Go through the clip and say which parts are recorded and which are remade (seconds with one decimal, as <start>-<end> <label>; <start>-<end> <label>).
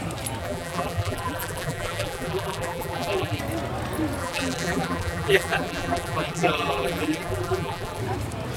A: 0.0-0.4 recorded; 0.4-3.4 remade; 3.4-4.2 recorded; 4.2-8.0 remade; 8.0-8.6 recorded